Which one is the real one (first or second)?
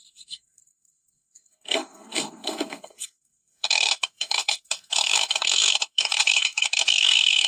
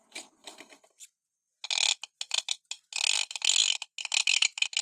second